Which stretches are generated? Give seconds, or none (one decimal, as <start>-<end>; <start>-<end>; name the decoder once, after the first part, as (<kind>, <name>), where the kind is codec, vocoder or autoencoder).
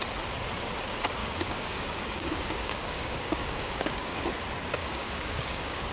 1.2-4.3 (codec, DAC); 4.8-5.9